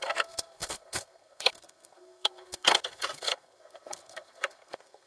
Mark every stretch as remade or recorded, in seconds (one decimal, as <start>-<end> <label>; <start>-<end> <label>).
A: 0.0-5.1 remade